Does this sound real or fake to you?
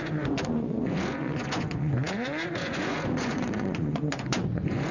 fake